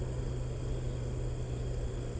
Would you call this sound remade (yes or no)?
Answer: no